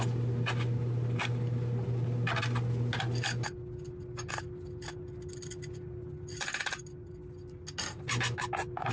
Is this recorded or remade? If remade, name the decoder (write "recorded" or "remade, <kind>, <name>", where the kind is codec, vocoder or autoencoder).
recorded